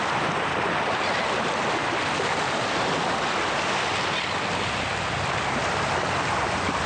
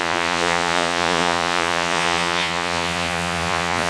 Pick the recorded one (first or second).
first